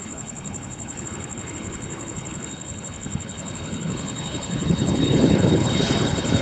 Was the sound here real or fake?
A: fake